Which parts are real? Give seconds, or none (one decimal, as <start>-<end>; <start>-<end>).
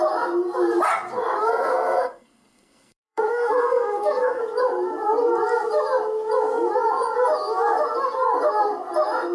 0.0-1.4; 4.4-9.3